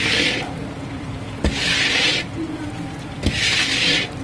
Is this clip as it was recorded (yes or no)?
no